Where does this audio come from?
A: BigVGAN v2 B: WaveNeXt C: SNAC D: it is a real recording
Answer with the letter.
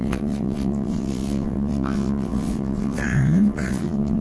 B